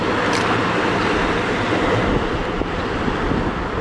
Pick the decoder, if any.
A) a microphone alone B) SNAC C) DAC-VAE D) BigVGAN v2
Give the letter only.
A